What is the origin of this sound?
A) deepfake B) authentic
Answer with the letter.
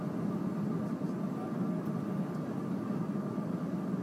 B